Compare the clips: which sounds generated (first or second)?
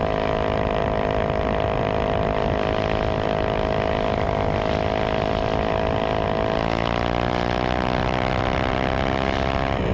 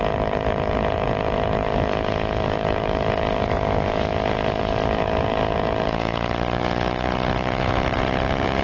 second